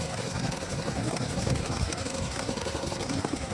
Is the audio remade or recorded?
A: remade